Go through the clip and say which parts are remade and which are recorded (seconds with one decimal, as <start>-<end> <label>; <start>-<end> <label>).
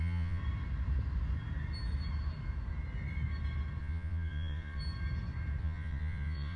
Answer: 0.0-0.4 remade; 0.4-3.8 recorded; 3.8-4.8 remade; 4.8-5.6 recorded; 5.6-6.6 remade